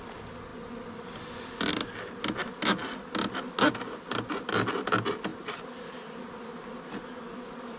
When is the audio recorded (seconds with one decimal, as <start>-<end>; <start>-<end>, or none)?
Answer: 0.0-7.8